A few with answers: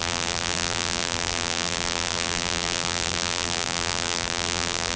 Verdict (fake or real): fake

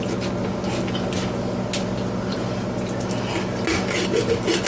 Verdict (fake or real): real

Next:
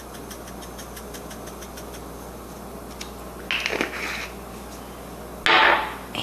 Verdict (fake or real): real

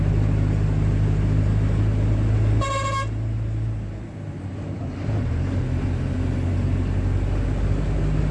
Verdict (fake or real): real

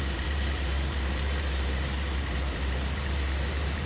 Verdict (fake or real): fake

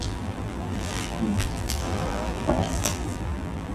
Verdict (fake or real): fake